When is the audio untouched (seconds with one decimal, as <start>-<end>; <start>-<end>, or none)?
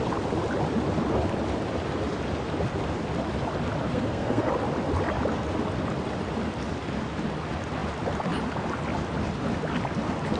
0.0-3.9; 4.5-10.4